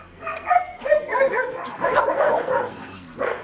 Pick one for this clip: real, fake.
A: fake